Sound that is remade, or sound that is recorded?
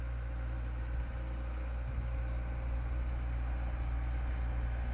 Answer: recorded